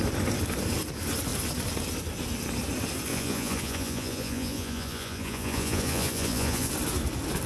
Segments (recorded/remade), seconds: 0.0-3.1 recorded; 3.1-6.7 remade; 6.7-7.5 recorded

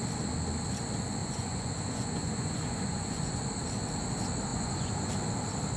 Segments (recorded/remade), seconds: 0.0-1.2 recorded; 1.2-3.4 remade; 3.4-4.5 recorded; 4.5-5.1 remade; 5.1-5.8 recorded

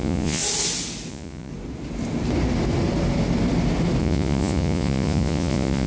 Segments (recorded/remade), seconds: 0.0-0.4 remade; 0.4-1.1 recorded; 1.1-1.5 remade; 1.5-4.0 recorded; 4.0-5.9 remade

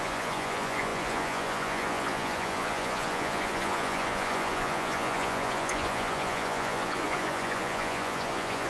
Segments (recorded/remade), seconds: 0.0-8.7 remade

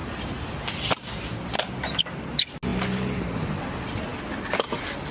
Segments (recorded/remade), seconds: 0.0-5.1 recorded

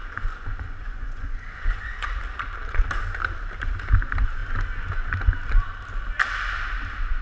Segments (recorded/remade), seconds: 0.0-2.2 remade; 2.2-7.2 recorded

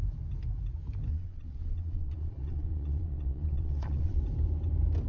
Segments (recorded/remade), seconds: 0.0-1.1 recorded; 1.1-4.2 remade; 4.2-5.1 recorded

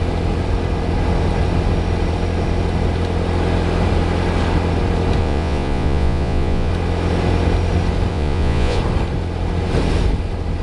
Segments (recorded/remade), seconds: 0.0-5.2 recorded; 5.2-6.7 remade; 6.7-8.1 recorded; 8.1-8.8 remade; 8.8-10.6 recorded